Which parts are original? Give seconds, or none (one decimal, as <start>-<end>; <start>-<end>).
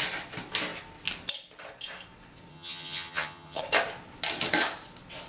0.0-2.5; 3.6-5.3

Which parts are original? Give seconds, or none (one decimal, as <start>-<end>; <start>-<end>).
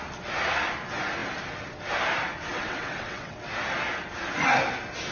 0.0-2.5; 3.5-5.1